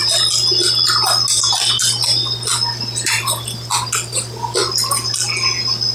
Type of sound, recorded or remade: recorded